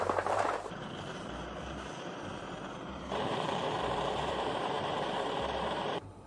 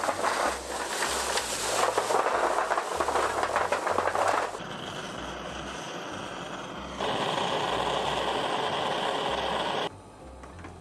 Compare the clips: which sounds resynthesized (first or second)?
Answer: first